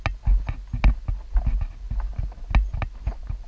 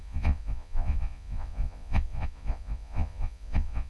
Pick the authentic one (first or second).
first